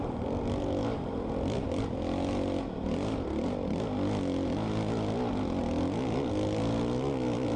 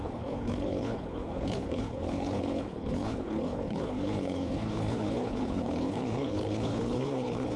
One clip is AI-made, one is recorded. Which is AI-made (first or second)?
second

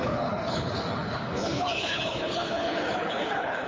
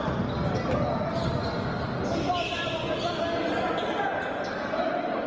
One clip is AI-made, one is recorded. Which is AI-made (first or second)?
first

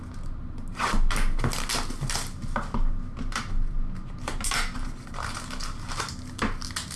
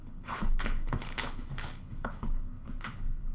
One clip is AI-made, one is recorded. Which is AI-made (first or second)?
second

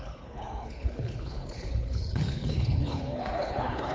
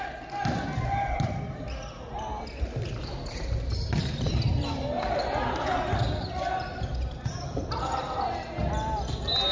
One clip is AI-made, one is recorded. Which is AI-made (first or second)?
first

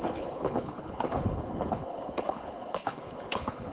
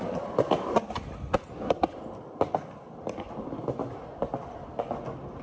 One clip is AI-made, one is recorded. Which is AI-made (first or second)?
first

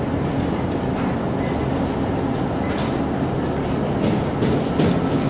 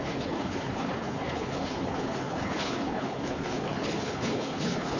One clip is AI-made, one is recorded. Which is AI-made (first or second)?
second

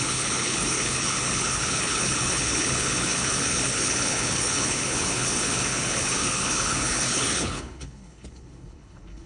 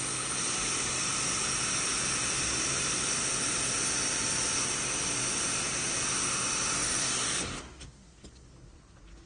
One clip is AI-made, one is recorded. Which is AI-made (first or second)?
first